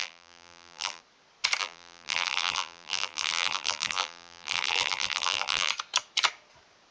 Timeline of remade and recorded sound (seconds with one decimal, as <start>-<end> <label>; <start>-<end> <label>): 0.0-1.0 remade; 1.0-1.6 recorded; 1.6-5.7 remade; 5.7-6.9 recorded